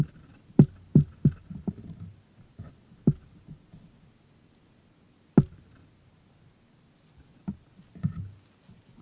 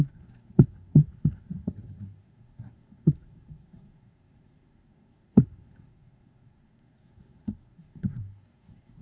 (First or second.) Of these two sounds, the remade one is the second